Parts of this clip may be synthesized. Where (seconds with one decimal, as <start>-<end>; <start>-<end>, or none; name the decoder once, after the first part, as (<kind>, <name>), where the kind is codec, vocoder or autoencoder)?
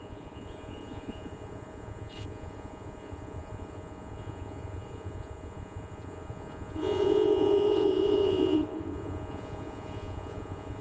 0.0-10.8 (vocoder, Vocos)